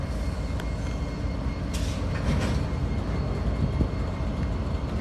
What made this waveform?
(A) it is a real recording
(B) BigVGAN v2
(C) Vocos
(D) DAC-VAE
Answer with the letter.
B